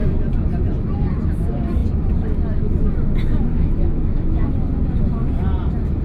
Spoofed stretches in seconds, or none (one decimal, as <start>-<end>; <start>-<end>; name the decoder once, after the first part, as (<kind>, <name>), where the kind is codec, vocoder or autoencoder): 3.5-4.5 (autoencoder, DAC-VAE)